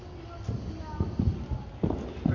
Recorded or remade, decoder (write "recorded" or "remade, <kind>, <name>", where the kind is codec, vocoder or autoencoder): recorded